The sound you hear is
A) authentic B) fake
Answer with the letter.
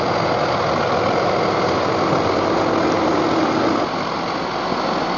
A